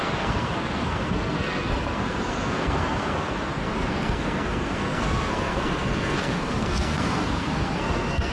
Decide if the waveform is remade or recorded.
remade